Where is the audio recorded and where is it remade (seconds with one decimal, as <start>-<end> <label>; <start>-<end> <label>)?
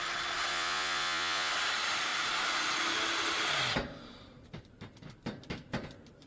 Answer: 0.0-0.5 recorded; 0.5-1.5 remade; 1.5-6.3 recorded